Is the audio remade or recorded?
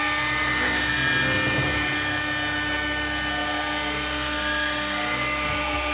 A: recorded